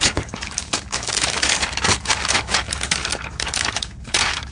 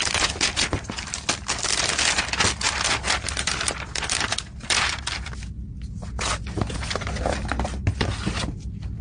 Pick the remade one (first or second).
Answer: first